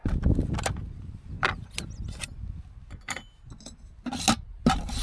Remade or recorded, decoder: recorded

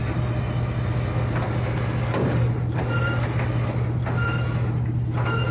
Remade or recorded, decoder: recorded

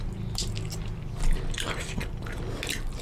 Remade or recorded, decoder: recorded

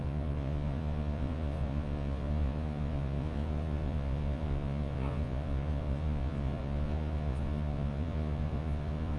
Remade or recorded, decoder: remade, vocoder, Vocos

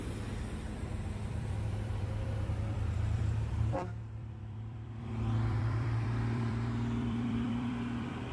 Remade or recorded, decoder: remade, vocoder, BigVGAN v2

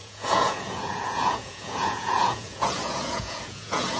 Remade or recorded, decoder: remade, vocoder, Vocos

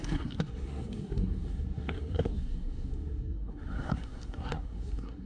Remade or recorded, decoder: remade, codec, SNAC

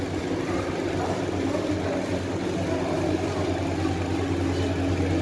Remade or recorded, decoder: recorded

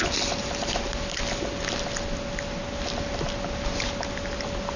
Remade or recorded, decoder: recorded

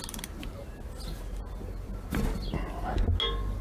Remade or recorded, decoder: recorded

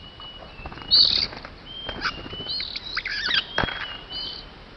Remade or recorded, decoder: recorded